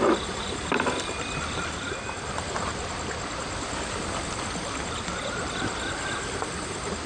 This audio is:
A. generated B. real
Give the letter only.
B